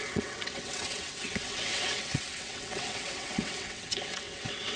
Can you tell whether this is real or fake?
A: fake